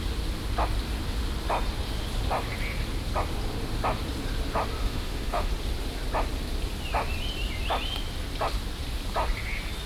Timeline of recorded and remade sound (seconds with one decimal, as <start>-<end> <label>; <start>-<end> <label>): 0.0-4.8 recorded; 4.8-5.5 remade; 5.5-9.9 recorded